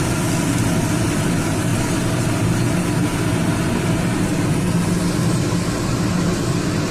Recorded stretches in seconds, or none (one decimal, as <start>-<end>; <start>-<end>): 0.0-6.9